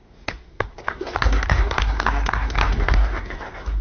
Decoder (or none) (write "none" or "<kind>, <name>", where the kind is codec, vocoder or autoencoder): codec, SNAC